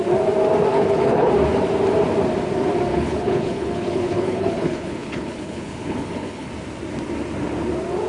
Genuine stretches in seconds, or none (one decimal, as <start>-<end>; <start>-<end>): 0.0-0.7; 1.3-2.9; 6.5-8.1

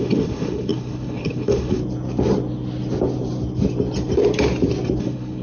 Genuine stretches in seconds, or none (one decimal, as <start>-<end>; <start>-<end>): 1.8-5.0

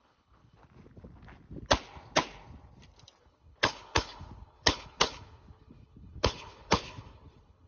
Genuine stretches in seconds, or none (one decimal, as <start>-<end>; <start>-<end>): 0.6-3.2